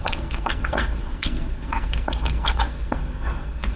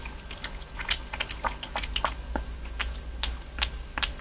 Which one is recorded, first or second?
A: second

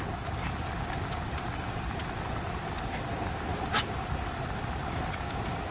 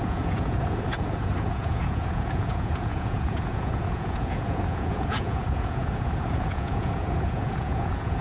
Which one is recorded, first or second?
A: first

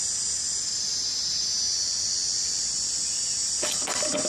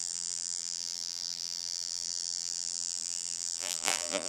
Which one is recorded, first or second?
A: first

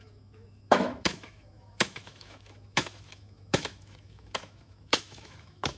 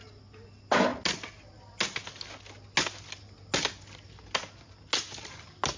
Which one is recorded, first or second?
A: second